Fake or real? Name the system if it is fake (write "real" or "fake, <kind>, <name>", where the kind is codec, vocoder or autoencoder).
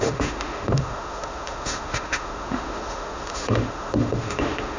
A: fake, autoencoder, DAC-VAE